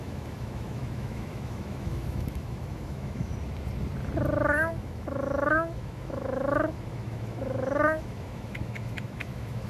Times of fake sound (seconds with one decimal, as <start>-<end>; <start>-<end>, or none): 0.0-3.3; 4.7-9.7